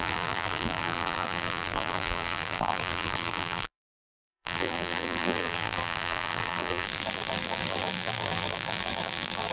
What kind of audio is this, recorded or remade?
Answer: remade